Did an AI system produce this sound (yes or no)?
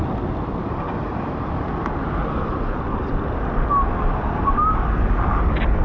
no